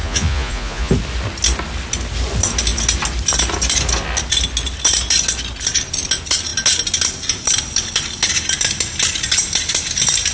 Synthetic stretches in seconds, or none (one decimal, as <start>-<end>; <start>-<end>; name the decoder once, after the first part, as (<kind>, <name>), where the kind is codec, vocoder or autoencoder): 0.0-0.9 (vocoder, Vocos)

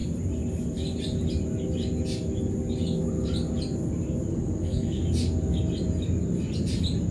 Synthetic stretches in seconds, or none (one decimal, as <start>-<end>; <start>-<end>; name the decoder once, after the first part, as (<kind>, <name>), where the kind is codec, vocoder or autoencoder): 4.3-5.0 (codec, SNAC)

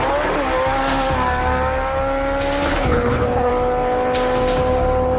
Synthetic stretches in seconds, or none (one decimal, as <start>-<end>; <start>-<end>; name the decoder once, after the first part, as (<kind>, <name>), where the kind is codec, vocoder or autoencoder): 2.7-3.5 (codec, HILCodec)

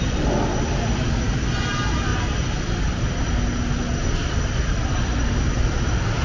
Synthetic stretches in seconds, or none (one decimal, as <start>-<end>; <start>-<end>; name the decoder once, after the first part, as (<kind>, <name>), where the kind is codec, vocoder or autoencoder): none

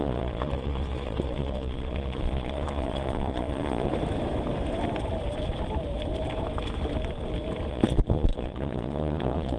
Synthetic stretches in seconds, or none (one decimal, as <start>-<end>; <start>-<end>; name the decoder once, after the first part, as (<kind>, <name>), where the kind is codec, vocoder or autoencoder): 0.0-3.9 (vocoder, Vocos); 7.7-9.6

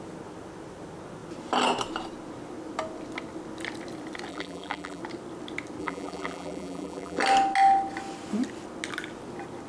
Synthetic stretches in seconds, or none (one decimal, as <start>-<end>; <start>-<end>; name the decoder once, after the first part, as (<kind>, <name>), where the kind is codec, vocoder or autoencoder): 4.3-5.0 (vocoder, BigVGAN v2); 5.8-7.2